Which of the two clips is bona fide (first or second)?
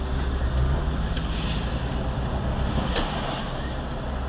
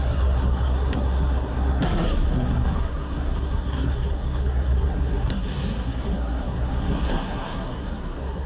first